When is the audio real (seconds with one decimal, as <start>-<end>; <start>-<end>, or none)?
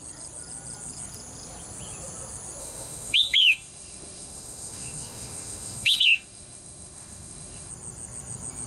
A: 0.0-2.6; 7.7-8.7